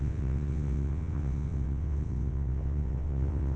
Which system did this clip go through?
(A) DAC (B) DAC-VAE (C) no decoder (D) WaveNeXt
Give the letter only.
D